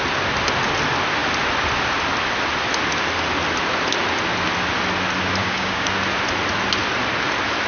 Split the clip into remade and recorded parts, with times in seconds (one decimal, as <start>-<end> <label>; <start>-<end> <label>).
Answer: 0.0-5.4 recorded; 5.4-5.9 remade; 5.9-7.7 recorded